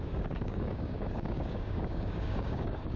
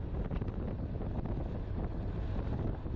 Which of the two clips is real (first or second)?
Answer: second